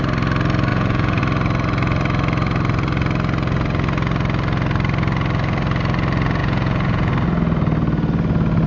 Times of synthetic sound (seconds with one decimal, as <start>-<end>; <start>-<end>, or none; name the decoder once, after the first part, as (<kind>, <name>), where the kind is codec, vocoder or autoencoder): 0.7-1.2 (vocoder, Vocos); 6.4-7.1